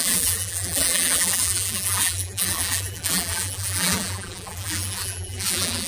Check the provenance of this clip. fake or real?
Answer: fake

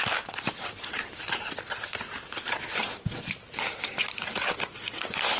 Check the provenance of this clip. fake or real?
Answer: fake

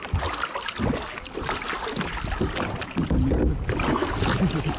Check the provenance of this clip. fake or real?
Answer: real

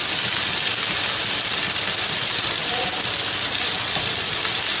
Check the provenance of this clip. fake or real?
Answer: real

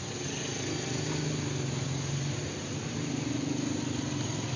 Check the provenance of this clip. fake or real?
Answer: real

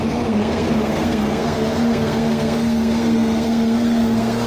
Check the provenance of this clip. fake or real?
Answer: fake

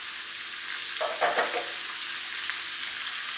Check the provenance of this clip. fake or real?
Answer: real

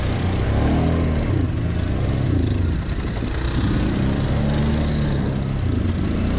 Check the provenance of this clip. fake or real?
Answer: real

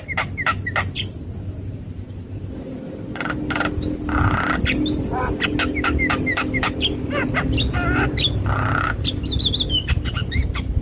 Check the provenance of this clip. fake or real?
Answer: real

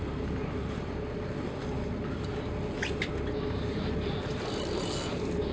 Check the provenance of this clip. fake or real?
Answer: real